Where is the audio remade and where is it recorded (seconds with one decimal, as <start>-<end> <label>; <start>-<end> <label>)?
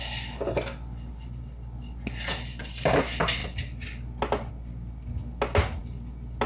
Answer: 0.0-6.5 recorded